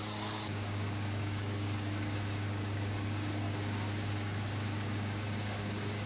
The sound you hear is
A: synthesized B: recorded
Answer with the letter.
A